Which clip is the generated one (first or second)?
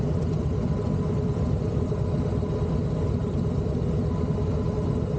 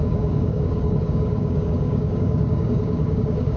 second